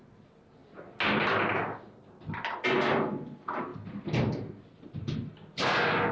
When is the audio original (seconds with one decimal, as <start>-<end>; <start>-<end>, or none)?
0.0-6.1